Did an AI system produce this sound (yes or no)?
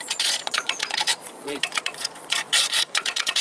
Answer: yes